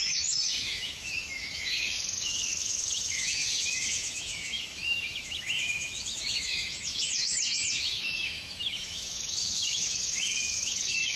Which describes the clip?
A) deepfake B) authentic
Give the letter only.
A